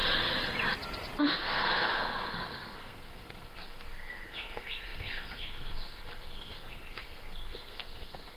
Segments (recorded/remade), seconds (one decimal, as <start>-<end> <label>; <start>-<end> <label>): 0.0-1.2 recorded; 1.2-8.4 remade